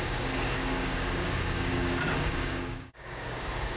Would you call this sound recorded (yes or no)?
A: no